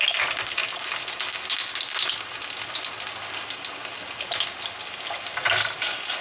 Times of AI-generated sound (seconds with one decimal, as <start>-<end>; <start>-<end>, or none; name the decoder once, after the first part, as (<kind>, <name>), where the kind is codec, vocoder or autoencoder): none